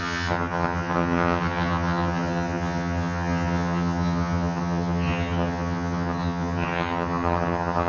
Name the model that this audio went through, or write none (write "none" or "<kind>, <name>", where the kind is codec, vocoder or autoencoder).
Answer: vocoder, HiFi-GAN